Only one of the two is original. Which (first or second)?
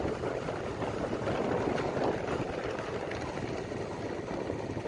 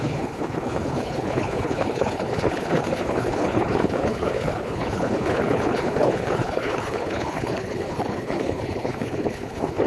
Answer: first